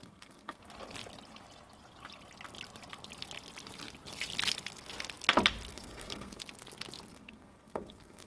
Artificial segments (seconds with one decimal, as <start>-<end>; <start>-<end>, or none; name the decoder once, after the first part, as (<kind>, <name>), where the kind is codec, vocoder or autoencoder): 0.0-0.6 (codec, SNAC); 5.7-6.4; 7.1-8.3